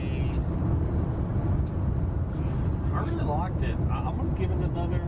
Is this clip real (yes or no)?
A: yes